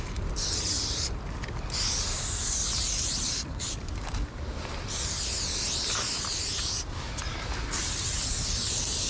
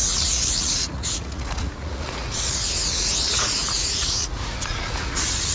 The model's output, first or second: second